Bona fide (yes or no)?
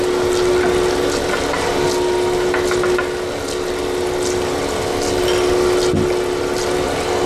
yes